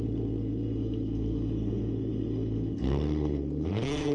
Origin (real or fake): fake